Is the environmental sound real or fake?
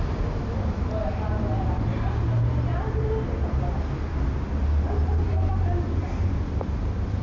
real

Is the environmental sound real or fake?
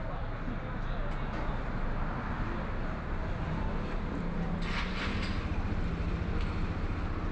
real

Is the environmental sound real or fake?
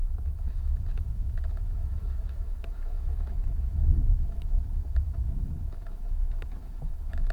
fake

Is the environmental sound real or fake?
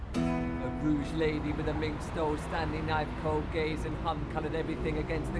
real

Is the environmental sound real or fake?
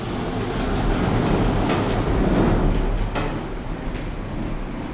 real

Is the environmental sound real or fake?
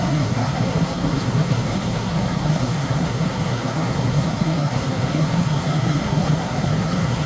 fake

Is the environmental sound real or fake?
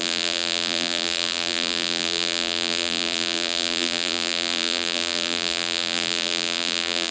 fake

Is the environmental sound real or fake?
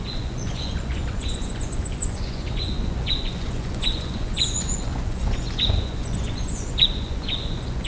fake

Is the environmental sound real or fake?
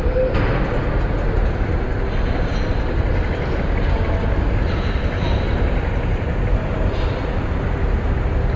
real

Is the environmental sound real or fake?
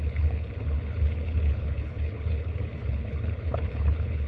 fake